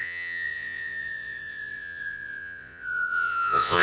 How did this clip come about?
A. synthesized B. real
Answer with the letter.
A